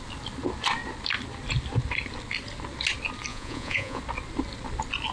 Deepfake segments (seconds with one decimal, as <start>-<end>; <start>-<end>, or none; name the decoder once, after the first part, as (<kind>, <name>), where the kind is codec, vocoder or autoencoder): 3.3-4.0 (vocoder, Vocos)